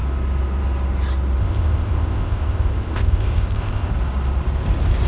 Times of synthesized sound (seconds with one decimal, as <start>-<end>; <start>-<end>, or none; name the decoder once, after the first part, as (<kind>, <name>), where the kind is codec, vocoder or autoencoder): 1.4-3.9 (codec, ZipCodec)